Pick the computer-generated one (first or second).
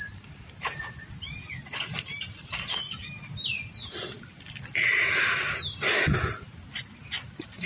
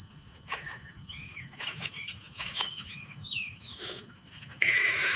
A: second